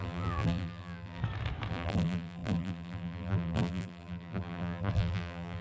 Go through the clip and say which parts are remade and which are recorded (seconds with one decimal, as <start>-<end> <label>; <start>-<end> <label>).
0.0-1.2 remade; 1.2-1.7 recorded; 1.7-5.6 remade